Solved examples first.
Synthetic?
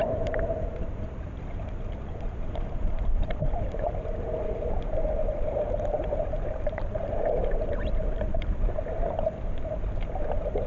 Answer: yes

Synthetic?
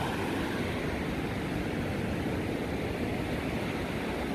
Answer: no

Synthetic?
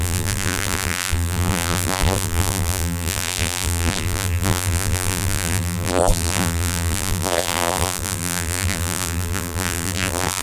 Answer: yes